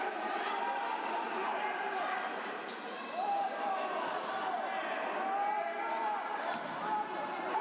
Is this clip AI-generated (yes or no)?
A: no